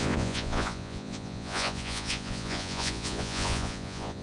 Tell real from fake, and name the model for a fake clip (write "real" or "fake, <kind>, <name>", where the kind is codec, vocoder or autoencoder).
fake, vocoder, Vocos